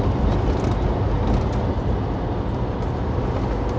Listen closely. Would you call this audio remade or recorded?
recorded